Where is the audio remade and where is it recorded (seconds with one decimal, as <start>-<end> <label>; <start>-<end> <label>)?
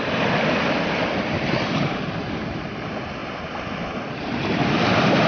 0.0-3.2 remade; 3.2-4.1 recorded; 4.1-5.3 remade